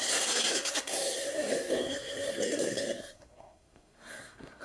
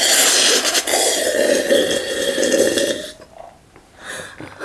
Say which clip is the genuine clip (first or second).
second